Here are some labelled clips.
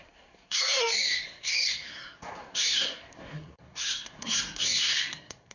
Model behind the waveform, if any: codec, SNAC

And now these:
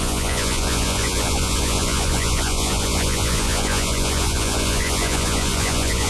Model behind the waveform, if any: vocoder, Vocos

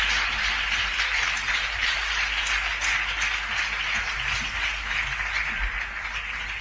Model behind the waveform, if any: none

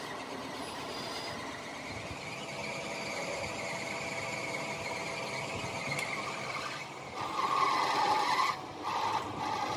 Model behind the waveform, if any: none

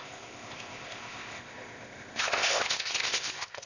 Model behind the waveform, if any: codec, ZipCodec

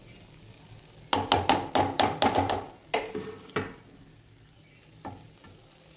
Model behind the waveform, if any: none